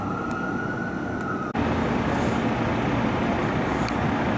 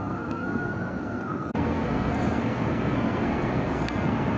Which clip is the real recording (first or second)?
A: first